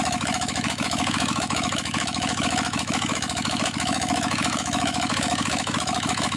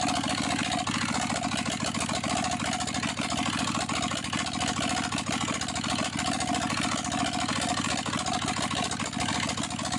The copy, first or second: first